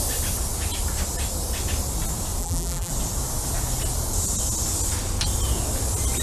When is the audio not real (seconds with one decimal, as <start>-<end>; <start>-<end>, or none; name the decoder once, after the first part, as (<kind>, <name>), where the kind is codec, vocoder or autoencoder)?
2.4-2.9 (vocoder, BigVGAN v2)

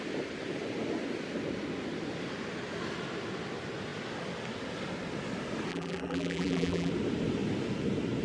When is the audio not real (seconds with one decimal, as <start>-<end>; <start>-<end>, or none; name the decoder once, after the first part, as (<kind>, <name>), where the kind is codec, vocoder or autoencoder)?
5.7-6.9 (vocoder, BigVGAN v2)